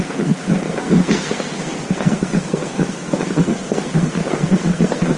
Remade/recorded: remade